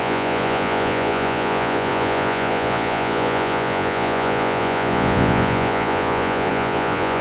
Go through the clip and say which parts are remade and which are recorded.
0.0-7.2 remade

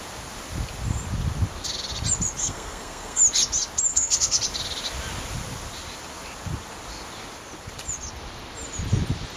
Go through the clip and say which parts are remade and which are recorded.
0.0-2.4 recorded; 2.4-3.2 remade; 3.2-3.9 recorded; 3.9-4.4 remade; 4.4-9.4 recorded